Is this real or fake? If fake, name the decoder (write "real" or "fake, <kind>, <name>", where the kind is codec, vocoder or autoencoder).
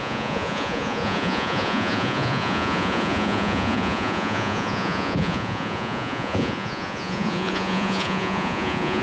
fake, vocoder, Vocos